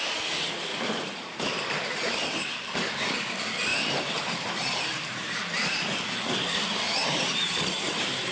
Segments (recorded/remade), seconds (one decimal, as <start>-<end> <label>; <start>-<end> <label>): 0.0-0.7 recorded; 0.7-2.7 remade; 2.7-3.7 recorded; 3.7-5.4 remade; 5.4-7.0 recorded; 7.0-7.9 remade; 7.9-8.3 recorded